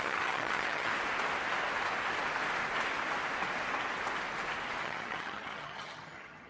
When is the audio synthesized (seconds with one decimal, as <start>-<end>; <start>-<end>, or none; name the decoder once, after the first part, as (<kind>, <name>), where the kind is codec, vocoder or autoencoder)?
0.0-0.9 (vocoder, HiFi-GAN); 4.8-6.5